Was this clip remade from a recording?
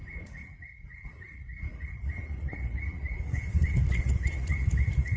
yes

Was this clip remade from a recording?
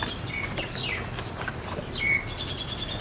no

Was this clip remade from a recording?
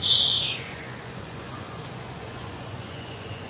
yes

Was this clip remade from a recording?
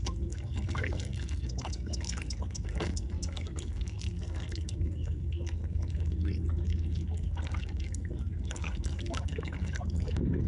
yes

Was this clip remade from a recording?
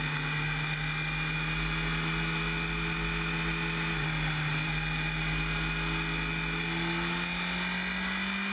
no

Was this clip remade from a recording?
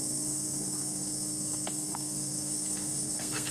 yes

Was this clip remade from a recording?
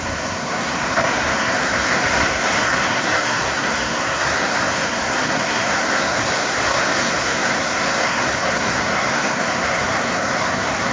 yes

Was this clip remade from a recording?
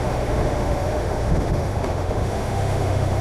yes